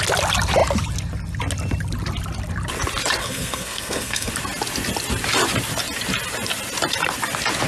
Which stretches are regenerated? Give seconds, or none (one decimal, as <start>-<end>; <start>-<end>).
3.2-4.3